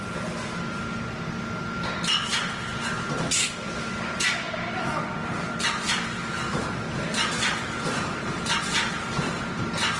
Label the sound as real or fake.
real